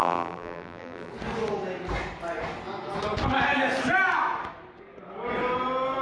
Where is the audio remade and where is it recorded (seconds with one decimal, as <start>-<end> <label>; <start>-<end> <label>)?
0.0-1.1 remade; 1.1-6.0 recorded